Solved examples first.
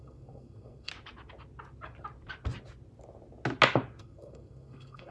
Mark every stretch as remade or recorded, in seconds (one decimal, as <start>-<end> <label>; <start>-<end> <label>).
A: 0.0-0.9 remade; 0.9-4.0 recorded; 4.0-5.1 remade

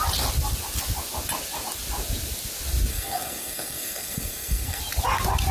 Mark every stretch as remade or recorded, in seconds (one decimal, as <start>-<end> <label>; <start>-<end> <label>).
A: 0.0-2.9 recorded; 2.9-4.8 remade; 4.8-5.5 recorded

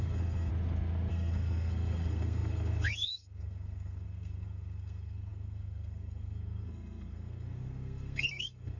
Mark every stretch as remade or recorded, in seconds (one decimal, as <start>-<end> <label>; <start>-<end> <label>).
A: 0.0-0.5 remade; 0.5-1.1 recorded; 1.1-8.8 remade

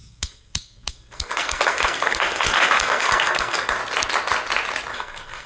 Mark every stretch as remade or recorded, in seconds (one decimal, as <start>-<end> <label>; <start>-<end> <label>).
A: 0.0-3.8 remade; 3.8-4.9 recorded; 4.9-5.5 remade

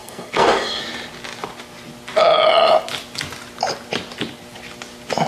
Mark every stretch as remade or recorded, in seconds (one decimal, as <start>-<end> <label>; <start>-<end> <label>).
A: 0.0-0.8 remade; 0.8-5.3 recorded

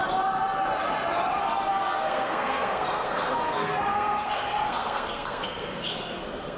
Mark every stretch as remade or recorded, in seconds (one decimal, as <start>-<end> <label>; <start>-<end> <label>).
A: 0.0-1.7 recorded; 1.7-6.6 remade